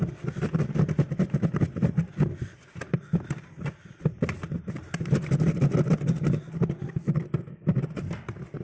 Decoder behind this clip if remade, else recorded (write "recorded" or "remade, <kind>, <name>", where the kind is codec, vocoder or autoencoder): recorded